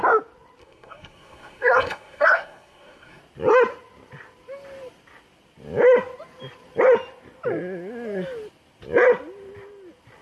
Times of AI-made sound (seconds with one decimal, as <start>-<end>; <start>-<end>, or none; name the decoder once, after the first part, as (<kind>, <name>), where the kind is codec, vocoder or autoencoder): 0.6-3.2 (codec, SNAC)